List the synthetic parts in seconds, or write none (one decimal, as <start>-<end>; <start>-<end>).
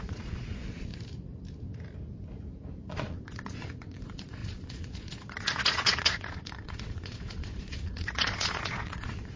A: 0.0-0.9; 2.9-9.4